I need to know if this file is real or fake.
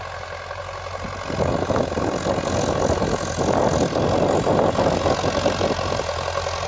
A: real